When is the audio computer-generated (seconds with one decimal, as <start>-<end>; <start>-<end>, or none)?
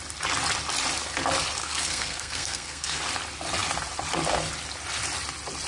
1.6-3.0